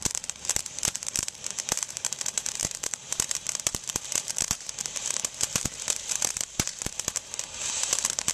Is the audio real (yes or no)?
no